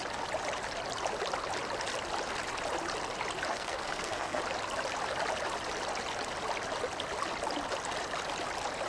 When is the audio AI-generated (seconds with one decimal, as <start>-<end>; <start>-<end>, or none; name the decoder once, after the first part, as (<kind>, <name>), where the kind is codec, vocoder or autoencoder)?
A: 3.5-4.4 (codec, SNAC)